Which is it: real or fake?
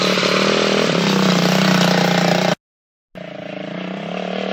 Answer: real